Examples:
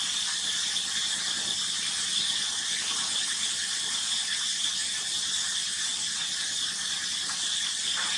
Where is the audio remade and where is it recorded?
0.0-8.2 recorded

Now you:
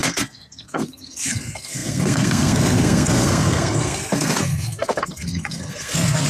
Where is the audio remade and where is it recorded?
0.0-6.3 remade

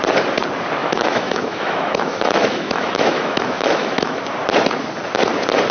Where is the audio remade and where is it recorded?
0.0-0.8 recorded; 0.8-4.2 remade; 4.2-5.7 recorded

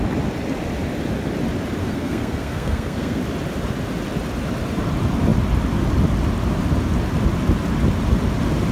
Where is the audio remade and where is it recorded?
0.0-1.8 recorded; 1.8-3.2 remade; 3.2-8.7 recorded

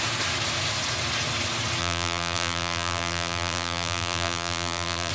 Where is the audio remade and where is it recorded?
0.0-1.8 recorded; 1.8-5.1 remade

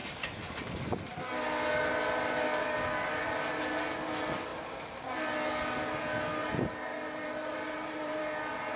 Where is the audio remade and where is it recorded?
0.0-4.5 recorded; 4.5-5.3 remade; 5.3-6.4 recorded; 6.4-8.2 remade; 8.2-8.8 recorded